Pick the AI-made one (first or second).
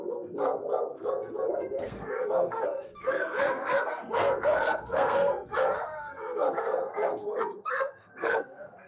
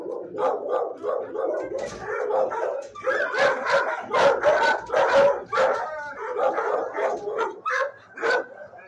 first